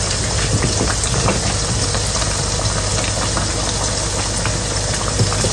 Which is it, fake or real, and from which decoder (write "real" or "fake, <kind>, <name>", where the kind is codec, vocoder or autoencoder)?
real